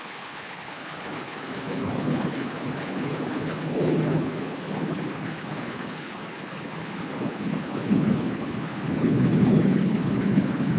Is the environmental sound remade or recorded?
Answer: remade